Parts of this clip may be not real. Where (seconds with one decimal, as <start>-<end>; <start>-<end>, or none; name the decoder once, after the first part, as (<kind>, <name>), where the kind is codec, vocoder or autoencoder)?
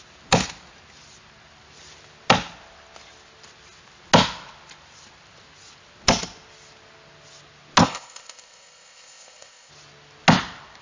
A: 7.8-9.7 (codec, ZipCodec)